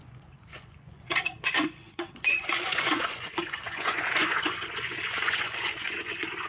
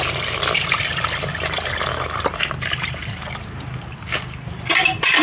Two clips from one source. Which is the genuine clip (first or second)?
second